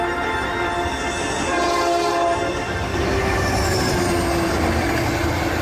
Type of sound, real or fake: real